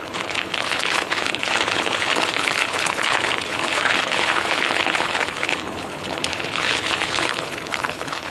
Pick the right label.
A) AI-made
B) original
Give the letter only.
A